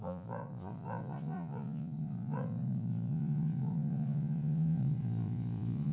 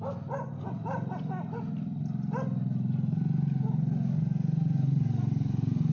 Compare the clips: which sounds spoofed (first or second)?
first